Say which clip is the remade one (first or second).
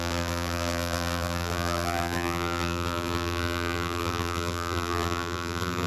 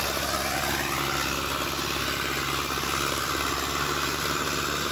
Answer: first